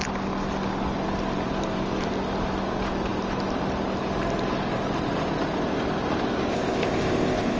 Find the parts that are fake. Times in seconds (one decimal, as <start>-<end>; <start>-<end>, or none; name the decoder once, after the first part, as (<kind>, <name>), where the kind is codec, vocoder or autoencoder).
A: 6.5-7.6 (codec, ZipCodec)